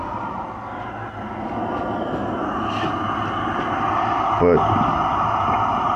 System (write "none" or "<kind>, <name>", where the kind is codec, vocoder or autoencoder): none